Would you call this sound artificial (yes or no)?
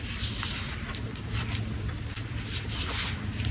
yes